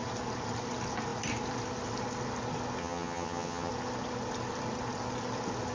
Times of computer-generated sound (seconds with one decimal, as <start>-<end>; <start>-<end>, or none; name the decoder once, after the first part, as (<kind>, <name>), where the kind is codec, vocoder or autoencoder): 2.8-3.7 (vocoder, HiFi-GAN)